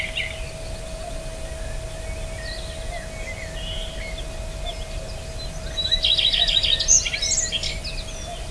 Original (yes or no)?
yes